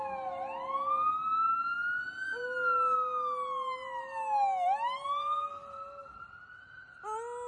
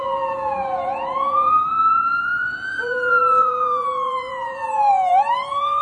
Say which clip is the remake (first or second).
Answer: second